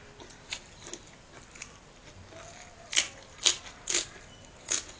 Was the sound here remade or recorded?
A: recorded